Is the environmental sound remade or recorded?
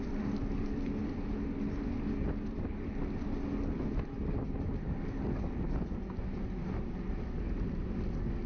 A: recorded